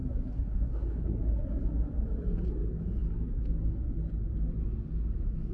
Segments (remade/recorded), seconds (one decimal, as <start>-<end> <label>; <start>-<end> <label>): 0.0-1.2 remade; 1.2-5.5 recorded